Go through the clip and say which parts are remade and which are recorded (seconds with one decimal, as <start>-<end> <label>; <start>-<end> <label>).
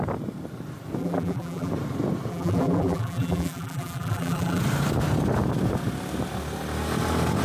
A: 0.0-1.0 recorded; 1.0-1.7 remade; 1.7-2.3 recorded; 2.3-4.6 remade; 4.6-7.4 recorded